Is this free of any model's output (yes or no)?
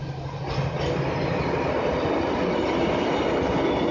yes